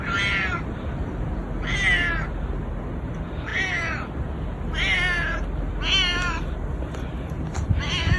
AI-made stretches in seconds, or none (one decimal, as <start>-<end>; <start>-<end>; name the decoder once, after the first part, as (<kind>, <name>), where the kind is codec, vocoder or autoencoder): none